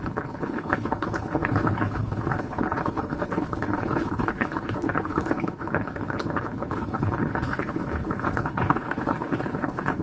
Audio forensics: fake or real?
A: fake